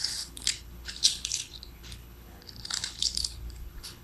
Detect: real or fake fake